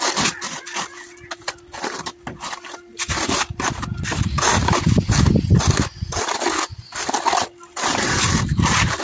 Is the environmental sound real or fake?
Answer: real